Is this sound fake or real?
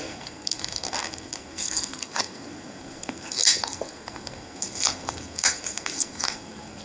fake